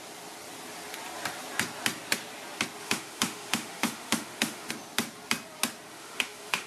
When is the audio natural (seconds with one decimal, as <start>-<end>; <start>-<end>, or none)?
0.0-2.8; 4.7-5.9